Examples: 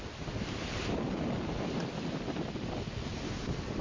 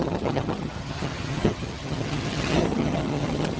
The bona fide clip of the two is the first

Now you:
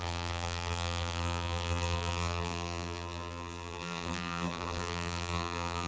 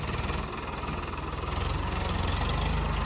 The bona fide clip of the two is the second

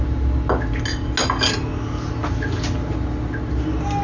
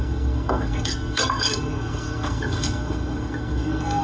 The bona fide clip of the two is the first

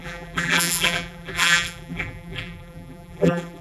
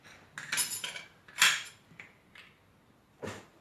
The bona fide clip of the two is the second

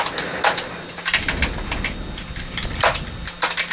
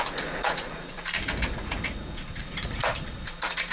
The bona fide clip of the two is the first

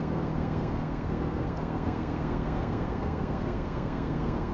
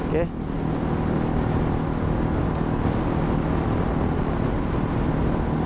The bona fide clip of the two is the second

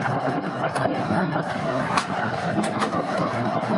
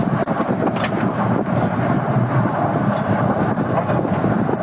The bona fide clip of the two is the second